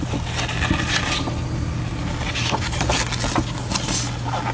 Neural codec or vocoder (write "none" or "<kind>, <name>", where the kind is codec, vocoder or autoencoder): none